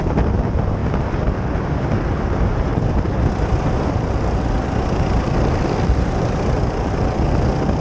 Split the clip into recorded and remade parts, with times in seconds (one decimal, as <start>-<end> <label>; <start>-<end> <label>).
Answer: 0.0-0.8 remade; 0.8-1.6 recorded; 1.6-2.7 remade; 2.7-3.3 recorded; 3.3-7.8 remade